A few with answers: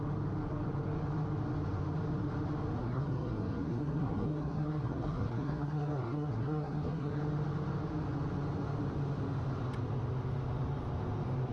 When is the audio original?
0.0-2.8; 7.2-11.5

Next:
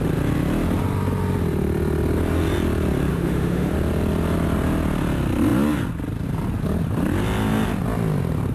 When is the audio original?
0.0-3.1; 3.7-8.5

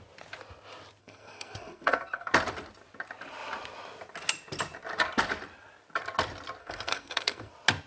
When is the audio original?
0.0-1.0; 2.3-6.6; 7.5-7.9

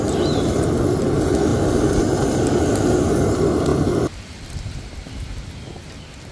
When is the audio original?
0.0-6.3